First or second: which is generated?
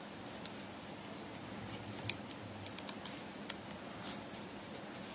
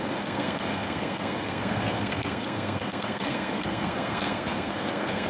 second